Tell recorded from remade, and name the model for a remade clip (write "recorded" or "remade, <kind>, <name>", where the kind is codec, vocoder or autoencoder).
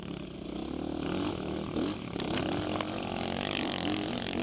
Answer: recorded